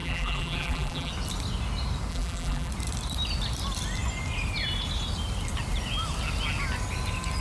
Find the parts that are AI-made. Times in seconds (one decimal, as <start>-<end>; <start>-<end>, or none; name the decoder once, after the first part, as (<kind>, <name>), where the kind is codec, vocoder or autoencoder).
0.0-1.1 (vocoder, BigVGAN v2); 2.1-2.7